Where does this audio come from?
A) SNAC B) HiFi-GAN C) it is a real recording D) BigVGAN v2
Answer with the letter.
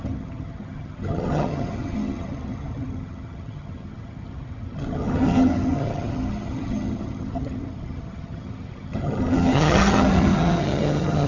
B